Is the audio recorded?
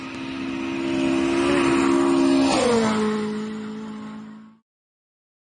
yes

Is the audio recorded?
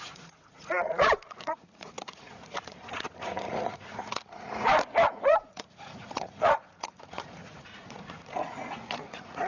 no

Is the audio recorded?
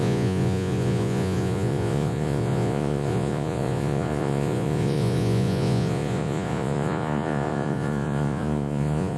no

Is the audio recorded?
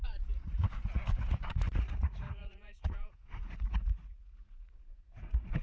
no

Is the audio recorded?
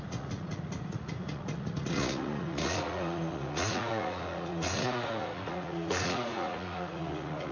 no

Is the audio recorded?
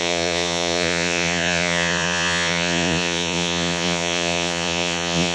no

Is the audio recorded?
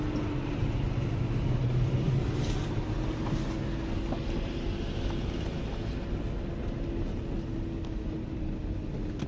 yes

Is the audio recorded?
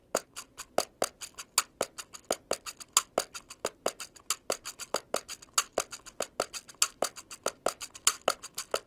yes